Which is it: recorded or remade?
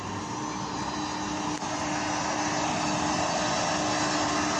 recorded